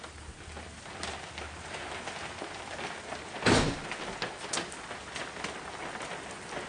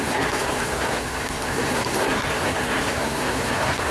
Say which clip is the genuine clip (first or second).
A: first